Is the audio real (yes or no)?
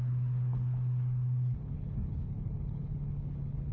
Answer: no